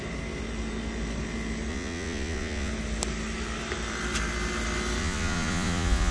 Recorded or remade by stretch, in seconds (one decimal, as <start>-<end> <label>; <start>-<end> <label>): 0.0-1.7 recorded; 1.7-2.7 remade; 2.7-5.0 recorded; 5.0-6.1 remade